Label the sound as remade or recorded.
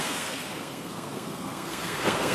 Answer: remade